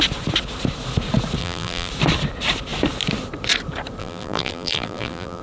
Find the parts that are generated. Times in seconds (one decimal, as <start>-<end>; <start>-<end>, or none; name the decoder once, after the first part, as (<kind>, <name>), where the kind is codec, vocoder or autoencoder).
1.4-1.9 (vocoder, BigVGAN v2); 4.0-5.4